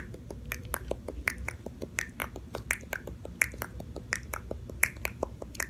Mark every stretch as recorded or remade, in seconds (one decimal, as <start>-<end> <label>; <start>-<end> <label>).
0.0-2.2 remade; 2.2-4.8 recorded; 4.8-5.7 remade